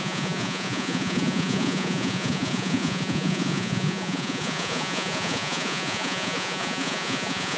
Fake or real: fake